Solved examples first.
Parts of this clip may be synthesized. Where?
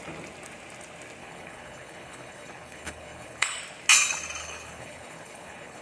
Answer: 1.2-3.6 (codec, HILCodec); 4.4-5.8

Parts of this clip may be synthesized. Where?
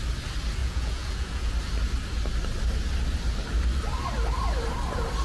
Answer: 0.6-1.5 (vocoder, Vocos)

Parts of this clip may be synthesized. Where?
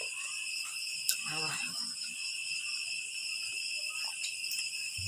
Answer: none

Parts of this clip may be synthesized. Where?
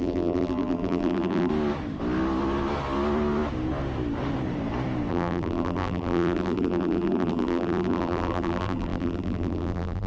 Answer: 0.0-1.5 (vocoder, BigVGAN v2); 5.1-10.1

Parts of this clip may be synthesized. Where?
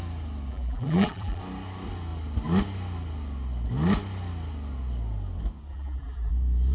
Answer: 0.5-1.4 (vocoder, BigVGAN v2); 5.7-6.3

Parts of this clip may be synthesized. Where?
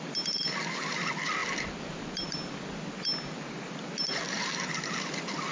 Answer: none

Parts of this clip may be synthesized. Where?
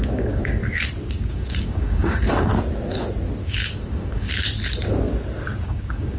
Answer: 0.0-0.6 (codec, DAC); 1.3-2.5; 3.4-4.3; 5.6-6.2